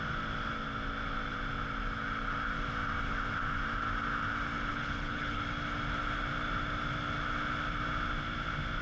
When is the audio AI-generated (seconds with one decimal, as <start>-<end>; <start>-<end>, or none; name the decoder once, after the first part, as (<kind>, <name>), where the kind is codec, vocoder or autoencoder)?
4.7-5.4 (codec, HILCodec)